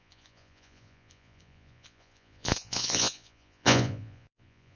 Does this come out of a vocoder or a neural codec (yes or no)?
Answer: yes